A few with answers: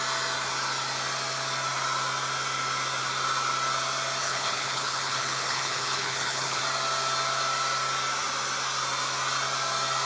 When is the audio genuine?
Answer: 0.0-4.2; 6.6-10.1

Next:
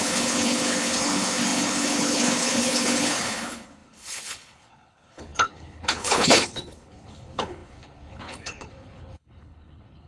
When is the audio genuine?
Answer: none

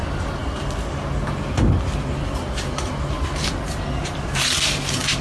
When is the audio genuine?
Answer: 0.0-5.2

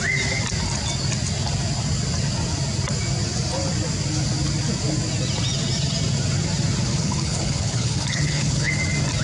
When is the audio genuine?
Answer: 0.0-6.9; 8.7-9.2